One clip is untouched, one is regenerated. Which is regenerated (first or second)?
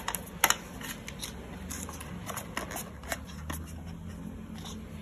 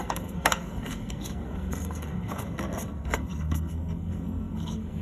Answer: second